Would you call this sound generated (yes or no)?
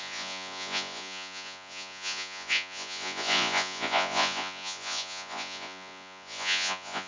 yes